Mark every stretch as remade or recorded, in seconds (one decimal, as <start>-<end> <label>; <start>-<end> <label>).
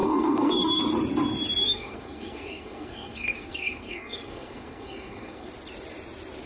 0.0-0.8 remade; 0.8-1.6 recorded; 1.6-5.5 remade; 5.5-6.5 recorded